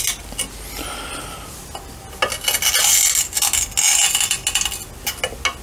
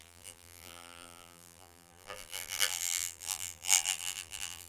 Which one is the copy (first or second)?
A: second